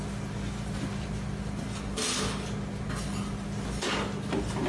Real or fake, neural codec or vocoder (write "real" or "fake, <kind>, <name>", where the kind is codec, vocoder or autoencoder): real